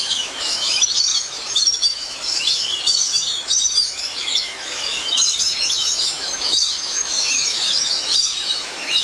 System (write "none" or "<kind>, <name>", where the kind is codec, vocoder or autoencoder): autoencoder, DAC-VAE